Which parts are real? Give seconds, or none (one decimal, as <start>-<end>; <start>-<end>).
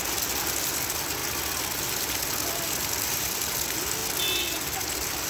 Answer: 0.0-5.3